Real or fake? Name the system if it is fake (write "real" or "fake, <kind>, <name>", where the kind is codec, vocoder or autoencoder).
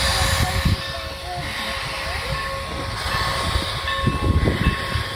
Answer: real